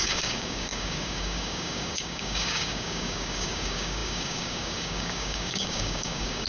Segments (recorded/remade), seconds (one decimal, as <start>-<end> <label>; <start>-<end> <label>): 0.0-6.5 remade